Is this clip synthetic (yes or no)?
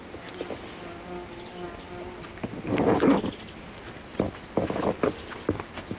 no